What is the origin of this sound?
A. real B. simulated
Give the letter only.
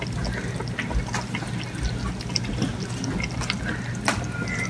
A